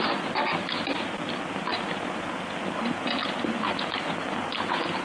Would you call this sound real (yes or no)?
yes